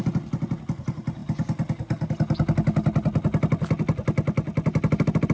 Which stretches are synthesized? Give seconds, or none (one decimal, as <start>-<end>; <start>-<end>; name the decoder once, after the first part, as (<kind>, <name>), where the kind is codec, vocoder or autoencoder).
none